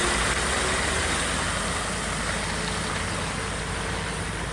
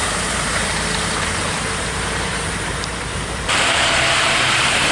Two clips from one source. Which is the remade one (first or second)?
second